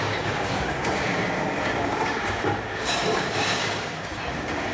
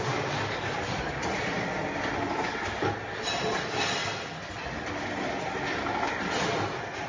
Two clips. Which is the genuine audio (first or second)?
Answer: second